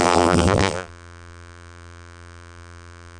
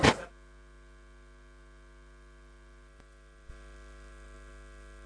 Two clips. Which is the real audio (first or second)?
second